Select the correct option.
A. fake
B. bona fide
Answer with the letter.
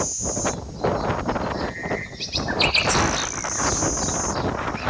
B